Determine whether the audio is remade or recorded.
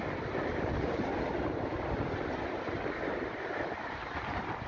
recorded